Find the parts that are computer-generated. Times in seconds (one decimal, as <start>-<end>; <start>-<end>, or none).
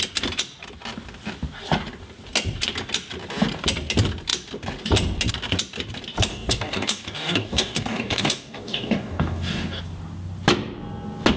6.3-9.8